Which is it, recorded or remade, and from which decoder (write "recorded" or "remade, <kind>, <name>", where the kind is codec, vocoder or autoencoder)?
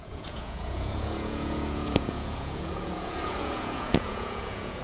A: remade, vocoder, Vocos